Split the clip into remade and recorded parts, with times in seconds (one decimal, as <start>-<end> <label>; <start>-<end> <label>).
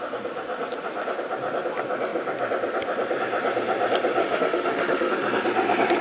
0.0-4.2 recorded; 4.2-5.1 remade; 5.1-6.0 recorded